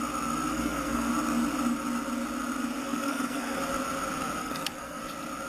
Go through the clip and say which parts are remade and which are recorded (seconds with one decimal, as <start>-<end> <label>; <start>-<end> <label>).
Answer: 0.0-0.5 recorded; 0.5-1.1 remade; 1.1-2.8 recorded; 2.8-3.6 remade; 3.6-4.4 recorded; 4.4-5.0 remade; 5.0-5.5 recorded